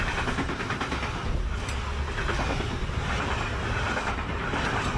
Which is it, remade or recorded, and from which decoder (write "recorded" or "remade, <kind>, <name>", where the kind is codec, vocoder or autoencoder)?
recorded